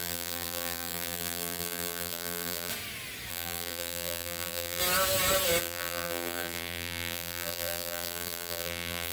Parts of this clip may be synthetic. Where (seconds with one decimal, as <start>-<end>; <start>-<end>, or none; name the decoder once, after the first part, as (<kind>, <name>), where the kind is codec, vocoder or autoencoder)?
0.0-2.7 (vocoder, BigVGAN v2); 3.3-4.8; 5.6-9.1